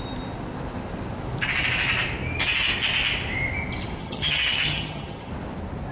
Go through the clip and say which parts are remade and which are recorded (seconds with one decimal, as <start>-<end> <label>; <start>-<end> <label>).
0.0-4.0 recorded; 4.0-5.3 remade; 5.3-5.9 recorded